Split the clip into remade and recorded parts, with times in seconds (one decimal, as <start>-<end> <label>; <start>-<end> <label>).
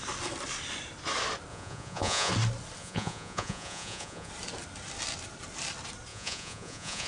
0.0-1.5 recorded; 1.5-2.3 remade; 2.3-2.8 recorded; 2.8-4.3 remade; 4.3-6.1 recorded; 6.1-7.1 remade